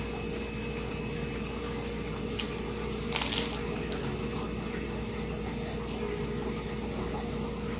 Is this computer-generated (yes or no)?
no